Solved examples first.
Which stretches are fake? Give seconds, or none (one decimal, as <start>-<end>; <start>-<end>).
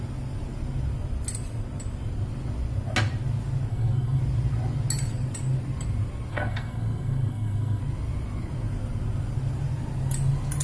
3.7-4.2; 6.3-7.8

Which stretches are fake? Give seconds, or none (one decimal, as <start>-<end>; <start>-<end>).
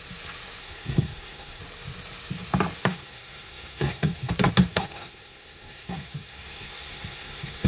0.6-1.6; 2.9-4.3; 4.7-7.7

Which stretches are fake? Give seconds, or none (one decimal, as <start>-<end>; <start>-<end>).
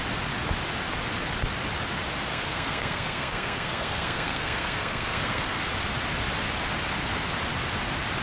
2.3-5.7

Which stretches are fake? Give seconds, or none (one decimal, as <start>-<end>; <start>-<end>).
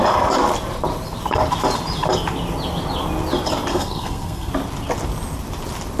3.7-4.5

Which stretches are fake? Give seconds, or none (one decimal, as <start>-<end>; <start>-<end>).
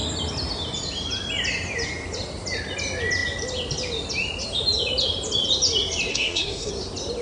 6.1-6.7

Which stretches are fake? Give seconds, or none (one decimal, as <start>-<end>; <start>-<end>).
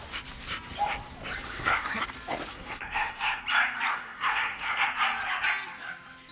1.5-2.0; 2.5-3.4; 3.9-4.9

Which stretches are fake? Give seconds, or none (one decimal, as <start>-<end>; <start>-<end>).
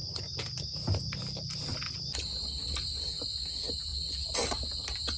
none